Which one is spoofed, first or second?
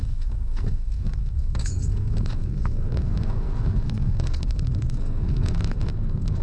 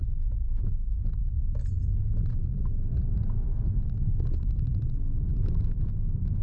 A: first